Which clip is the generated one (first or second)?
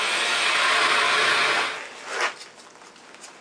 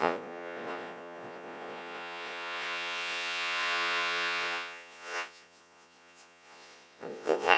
second